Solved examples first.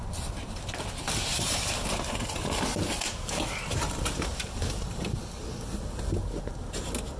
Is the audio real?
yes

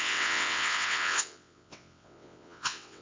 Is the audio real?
no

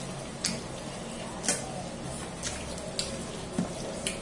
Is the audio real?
yes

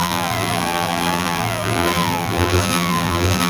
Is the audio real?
no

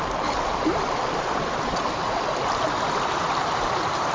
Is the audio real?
no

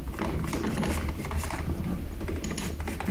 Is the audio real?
yes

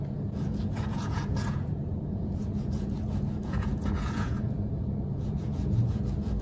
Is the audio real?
no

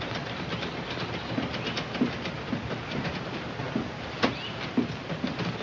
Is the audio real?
yes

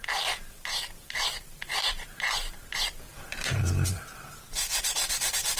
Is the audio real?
no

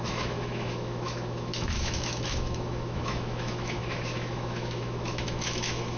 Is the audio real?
no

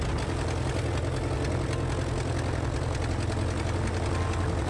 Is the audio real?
yes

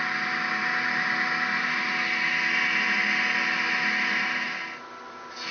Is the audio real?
yes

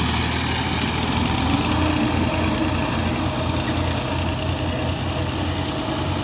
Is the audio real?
yes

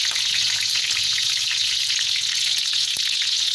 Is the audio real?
no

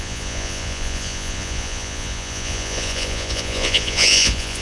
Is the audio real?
no